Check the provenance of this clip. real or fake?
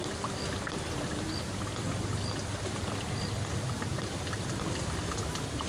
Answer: real